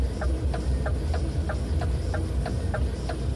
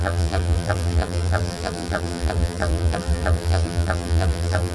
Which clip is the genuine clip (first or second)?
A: first